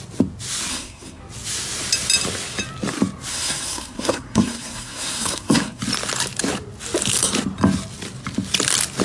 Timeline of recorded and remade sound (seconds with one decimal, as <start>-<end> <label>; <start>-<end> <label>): 0.0-0.7 recorded; 0.7-1.2 remade; 1.2-3.3 recorded; 3.3-5.8 remade; 5.8-9.0 recorded